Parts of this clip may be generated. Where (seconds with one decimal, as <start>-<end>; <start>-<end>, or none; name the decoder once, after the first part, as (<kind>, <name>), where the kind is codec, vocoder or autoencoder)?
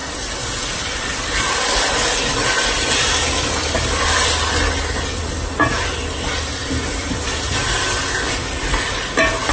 0.0-4.5 (vocoder, BigVGAN v2); 6.6-8.9